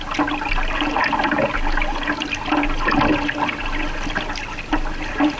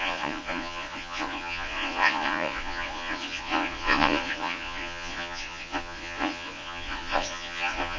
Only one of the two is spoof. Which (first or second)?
second